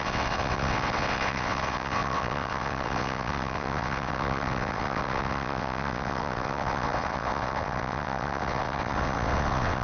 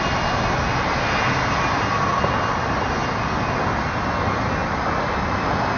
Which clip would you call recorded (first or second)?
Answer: second